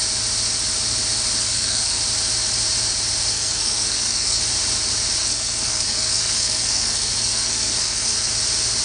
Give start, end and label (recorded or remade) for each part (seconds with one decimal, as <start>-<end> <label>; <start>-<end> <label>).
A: 0.0-1.4 recorded; 1.4-2.0 remade; 2.0-3.3 recorded; 3.3-4.4 remade; 4.4-5.2 recorded; 5.2-8.3 remade; 8.3-8.8 recorded